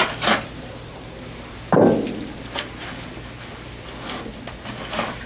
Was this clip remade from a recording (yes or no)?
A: no